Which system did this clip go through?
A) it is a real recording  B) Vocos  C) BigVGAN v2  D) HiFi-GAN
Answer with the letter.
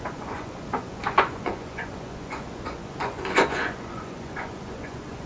B